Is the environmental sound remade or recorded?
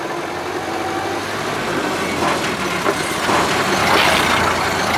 recorded